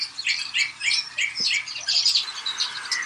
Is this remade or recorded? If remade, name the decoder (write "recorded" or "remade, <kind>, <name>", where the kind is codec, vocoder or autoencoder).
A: remade, vocoder, BigVGAN v2